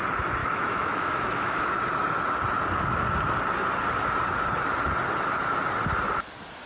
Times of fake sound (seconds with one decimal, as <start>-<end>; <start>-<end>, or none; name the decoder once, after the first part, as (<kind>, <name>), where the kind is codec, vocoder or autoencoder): 0.4-1.7 (autoencoder, DAC-VAE)